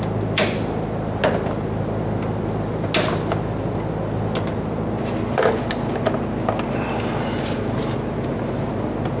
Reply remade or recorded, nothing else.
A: recorded